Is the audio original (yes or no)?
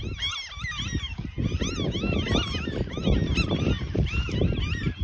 yes